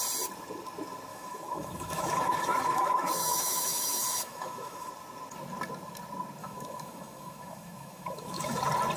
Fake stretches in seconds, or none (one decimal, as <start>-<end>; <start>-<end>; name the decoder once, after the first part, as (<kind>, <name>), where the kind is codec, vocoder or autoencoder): 1.1-4.9 (autoencoder, DAC-VAE); 6.4-8.6